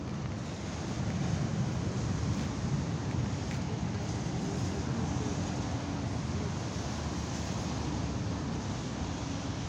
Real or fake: real